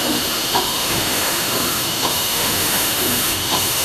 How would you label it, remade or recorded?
remade